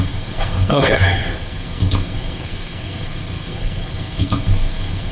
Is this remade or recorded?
remade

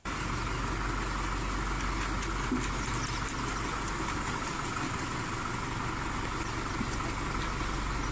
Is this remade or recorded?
recorded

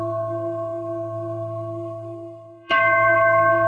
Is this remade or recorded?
remade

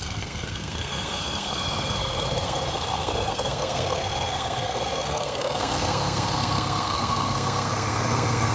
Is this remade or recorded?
remade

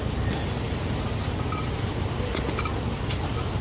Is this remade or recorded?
recorded